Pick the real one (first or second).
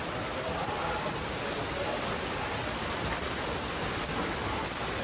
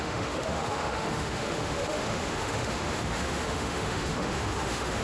first